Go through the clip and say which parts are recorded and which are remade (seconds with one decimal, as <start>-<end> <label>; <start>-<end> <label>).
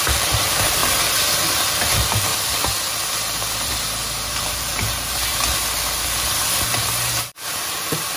0.0-0.8 remade; 0.8-1.8 recorded; 1.8-2.3 remade; 2.3-4.3 recorded; 4.3-5.3 remade; 5.3-6.7 recorded; 6.7-8.2 remade